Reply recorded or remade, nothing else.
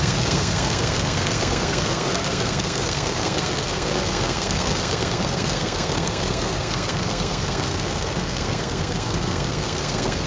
remade